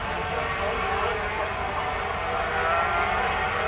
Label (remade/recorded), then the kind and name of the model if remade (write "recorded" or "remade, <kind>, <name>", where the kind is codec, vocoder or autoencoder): recorded